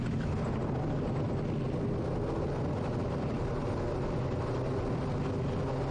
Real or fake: real